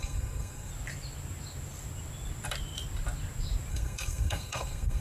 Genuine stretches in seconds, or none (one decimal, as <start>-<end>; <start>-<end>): 0.7-3.7